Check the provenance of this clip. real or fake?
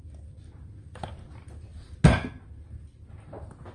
real